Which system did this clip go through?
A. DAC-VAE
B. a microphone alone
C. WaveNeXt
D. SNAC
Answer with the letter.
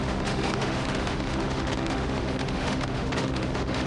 A